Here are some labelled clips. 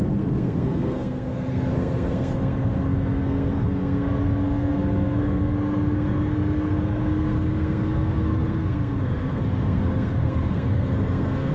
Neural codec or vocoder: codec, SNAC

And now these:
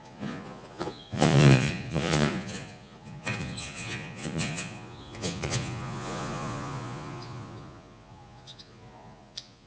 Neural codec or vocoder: vocoder, Vocos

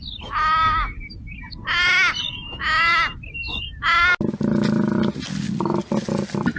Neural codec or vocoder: none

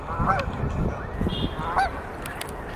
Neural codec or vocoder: vocoder, BigVGAN v2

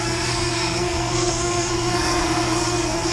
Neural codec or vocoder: codec, SNAC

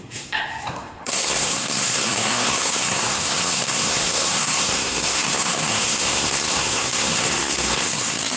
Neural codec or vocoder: codec, SNAC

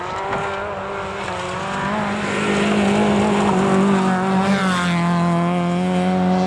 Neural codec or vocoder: none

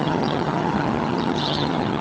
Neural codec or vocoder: vocoder, HiFi-GAN